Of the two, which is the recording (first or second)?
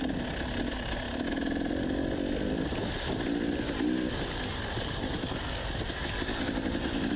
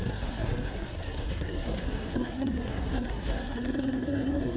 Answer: first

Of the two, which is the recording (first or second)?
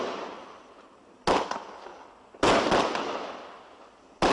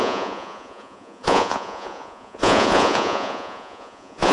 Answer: first